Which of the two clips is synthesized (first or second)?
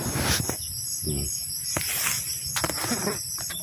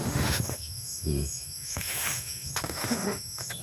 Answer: second